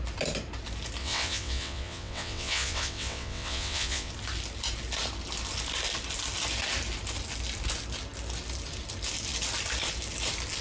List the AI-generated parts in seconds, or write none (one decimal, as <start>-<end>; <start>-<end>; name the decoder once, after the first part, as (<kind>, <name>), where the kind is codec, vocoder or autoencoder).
1.0-4.1 (vocoder, WaveNeXt)